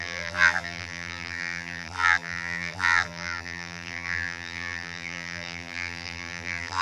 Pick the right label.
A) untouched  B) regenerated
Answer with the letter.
B